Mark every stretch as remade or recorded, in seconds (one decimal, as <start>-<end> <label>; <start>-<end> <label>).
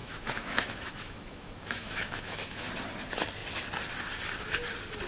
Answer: 0.0-2.7 remade; 2.7-5.1 recorded